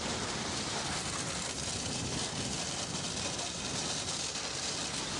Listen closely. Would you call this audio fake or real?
real